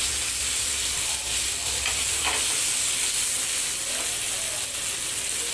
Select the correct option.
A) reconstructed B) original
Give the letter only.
B